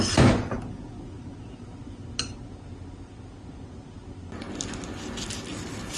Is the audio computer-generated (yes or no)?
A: no